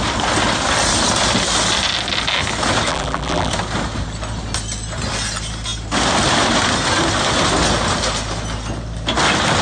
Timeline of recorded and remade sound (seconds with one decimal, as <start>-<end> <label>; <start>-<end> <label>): 0.0-2.9 recorded; 2.9-3.5 remade; 3.5-9.6 recorded